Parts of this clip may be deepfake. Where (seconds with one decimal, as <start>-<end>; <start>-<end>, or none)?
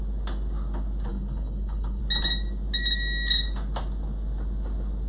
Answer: 1.1-2.0